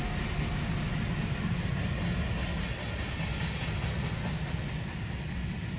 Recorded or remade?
recorded